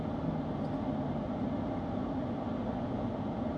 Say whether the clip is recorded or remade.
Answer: recorded